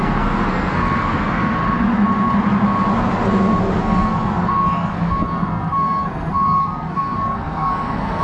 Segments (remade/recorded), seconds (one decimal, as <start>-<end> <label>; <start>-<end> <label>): 0.0-1.6 remade; 1.6-3.8 recorded; 3.8-8.2 remade